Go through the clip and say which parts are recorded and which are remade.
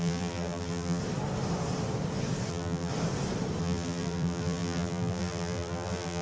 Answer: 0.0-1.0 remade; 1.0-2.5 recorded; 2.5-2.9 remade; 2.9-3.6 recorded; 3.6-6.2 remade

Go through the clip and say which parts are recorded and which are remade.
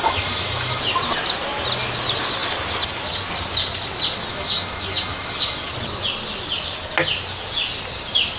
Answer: 0.0-0.8 remade; 0.8-4.3 recorded; 4.3-5.7 remade; 5.7-8.4 recorded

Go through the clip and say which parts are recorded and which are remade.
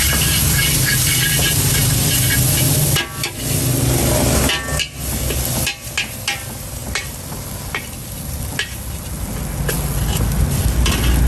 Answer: 0.0-11.3 recorded